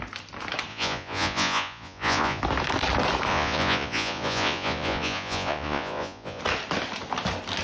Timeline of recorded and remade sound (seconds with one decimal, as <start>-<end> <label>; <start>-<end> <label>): 0.0-0.7 recorded; 0.7-2.4 remade; 2.4-3.3 recorded; 3.3-6.4 remade; 6.4-7.6 recorded